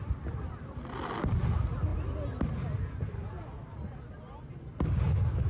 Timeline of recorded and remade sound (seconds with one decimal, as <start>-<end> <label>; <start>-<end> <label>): 0.0-5.5 recorded